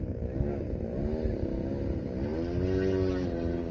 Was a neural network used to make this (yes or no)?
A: no